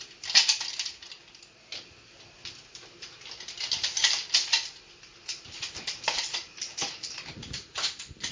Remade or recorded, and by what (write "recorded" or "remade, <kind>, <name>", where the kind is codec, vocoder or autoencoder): recorded